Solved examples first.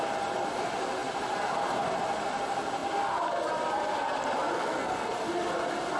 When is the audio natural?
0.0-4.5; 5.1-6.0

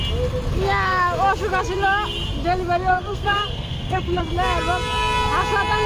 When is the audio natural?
0.0-2.9; 4.2-5.9

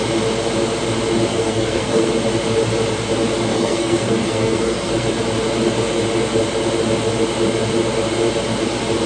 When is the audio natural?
0.0-1.3; 2.1-3.5; 5.1-9.1

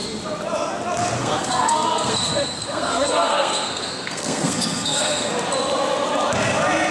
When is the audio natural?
0.0-1.2; 5.3-6.9

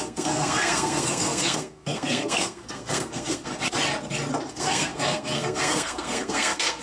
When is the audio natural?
3.5-4.5